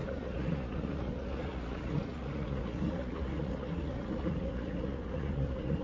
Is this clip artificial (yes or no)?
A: yes